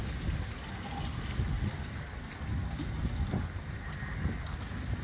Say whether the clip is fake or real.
real